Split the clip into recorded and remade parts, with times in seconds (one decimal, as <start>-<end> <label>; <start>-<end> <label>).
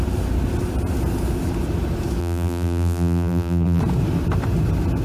0.0-2.2 recorded; 2.2-3.8 remade; 3.8-5.0 recorded